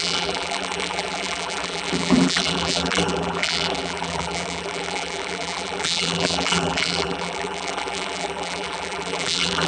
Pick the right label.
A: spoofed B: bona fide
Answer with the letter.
A